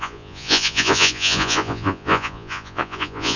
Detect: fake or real fake